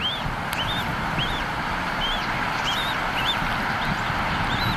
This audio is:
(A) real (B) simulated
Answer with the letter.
A